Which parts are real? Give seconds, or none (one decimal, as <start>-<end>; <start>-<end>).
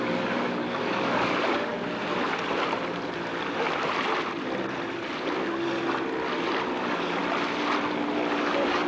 1.7-6.8; 7.2-8.4